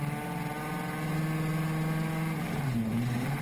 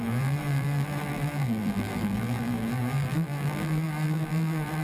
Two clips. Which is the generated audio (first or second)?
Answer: second